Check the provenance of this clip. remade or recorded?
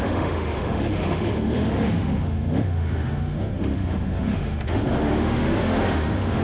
remade